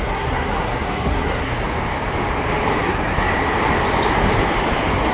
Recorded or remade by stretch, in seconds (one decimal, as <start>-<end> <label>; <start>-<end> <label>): 0.0-1.5 remade; 1.5-2.8 recorded; 2.8-3.3 remade; 3.3-5.1 recorded